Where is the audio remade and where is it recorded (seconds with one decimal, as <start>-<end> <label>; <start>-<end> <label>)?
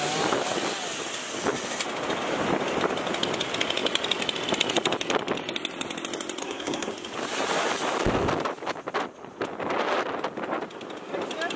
0.0-6.4 recorded; 6.4-6.9 remade; 6.9-11.6 recorded